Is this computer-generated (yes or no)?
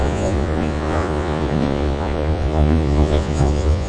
yes